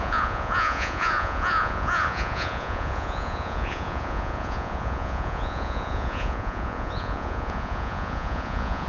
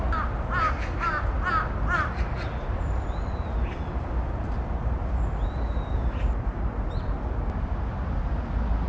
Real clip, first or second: second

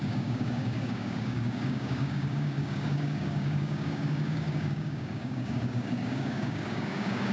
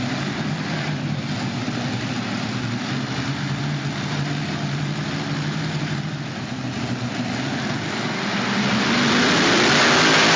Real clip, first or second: second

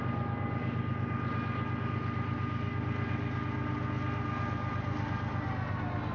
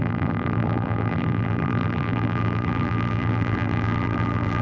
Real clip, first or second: first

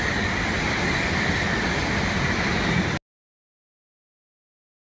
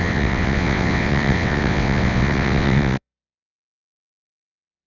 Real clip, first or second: first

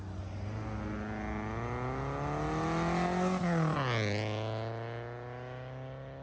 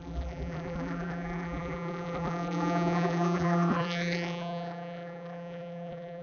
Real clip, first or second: first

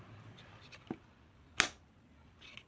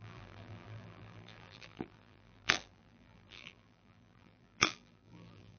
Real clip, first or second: first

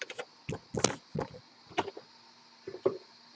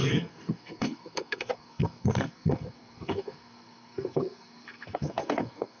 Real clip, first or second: first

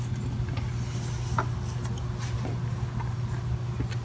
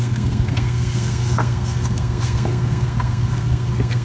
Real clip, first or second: first